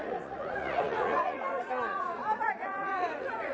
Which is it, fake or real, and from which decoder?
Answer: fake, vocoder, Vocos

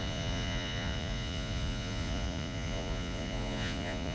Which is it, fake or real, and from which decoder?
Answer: fake, vocoder, Vocos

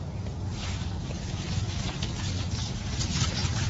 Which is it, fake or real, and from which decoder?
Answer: real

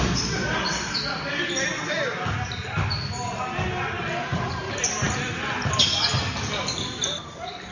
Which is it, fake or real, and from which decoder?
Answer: real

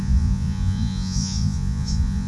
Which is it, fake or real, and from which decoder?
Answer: fake, vocoder, Vocos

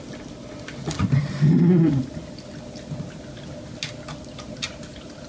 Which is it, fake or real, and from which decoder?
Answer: real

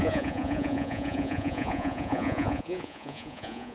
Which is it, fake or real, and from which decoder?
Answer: fake, vocoder, Vocos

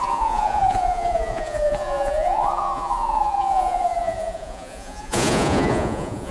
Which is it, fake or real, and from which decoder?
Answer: fake, vocoder, Vocos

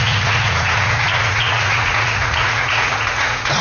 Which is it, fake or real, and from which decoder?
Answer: fake, vocoder, Vocos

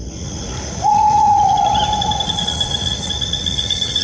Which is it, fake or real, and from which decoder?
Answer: fake, vocoder, Vocos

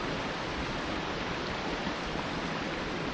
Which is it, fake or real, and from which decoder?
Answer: real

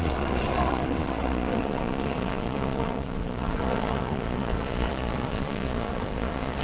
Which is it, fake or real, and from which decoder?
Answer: fake, vocoder, Vocos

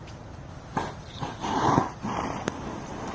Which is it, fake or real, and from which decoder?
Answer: real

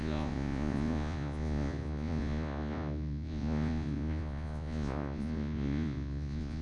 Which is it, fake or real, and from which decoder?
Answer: fake, vocoder, Vocos